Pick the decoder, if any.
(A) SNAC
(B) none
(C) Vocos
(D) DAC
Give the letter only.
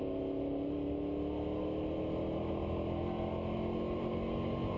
B